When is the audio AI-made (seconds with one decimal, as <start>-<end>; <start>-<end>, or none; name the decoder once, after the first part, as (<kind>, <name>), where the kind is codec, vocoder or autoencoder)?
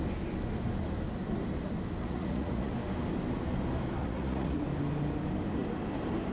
2.0-2.7 (vocoder, Vocos); 4.0-4.6